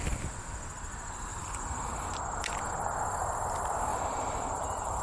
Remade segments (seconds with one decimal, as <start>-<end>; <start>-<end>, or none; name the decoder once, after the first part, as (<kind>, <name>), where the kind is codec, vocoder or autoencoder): 1.3-1.9 (vocoder, BigVGAN v2); 3.9-5.0